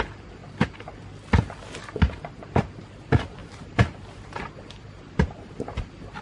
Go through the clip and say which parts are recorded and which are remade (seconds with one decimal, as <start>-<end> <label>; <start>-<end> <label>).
0.0-3.4 recorded; 3.4-5.5 remade; 5.5-6.2 recorded